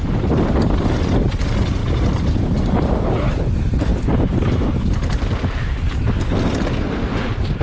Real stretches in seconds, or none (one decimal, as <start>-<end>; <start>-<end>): 0.0-7.6